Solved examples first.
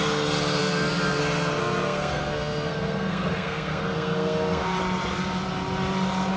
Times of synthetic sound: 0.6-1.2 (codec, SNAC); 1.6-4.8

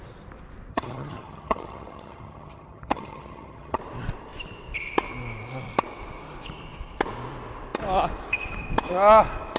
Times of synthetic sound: 0.7-3.8 (vocoder, HiFi-GAN)

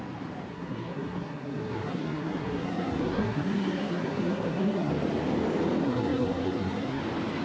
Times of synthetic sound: 0.5-4.9 (codec, SNAC); 5.8-7.0

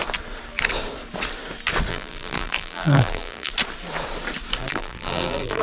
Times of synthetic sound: 1.9-3.5 (vocoder, BigVGAN v2); 4.6-5.6

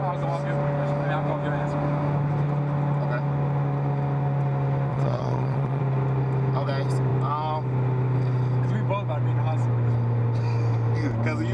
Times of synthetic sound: 4.9-5.8 (vocoder, Vocos)

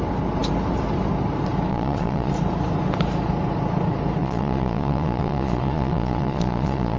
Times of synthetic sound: 1.7-2.3 (vocoder, Vocos); 4.2-7.0

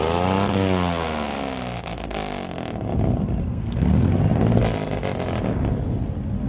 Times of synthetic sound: 3.4-4.1 (codec, SNAC)